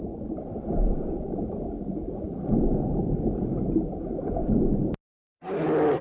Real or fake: real